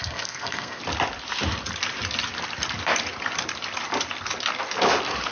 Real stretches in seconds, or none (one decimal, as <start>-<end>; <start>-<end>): 0.8-5.3